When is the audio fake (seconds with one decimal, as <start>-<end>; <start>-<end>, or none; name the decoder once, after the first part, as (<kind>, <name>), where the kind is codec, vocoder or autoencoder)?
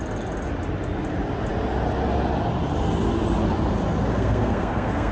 4.1-5.1 (codec, SNAC)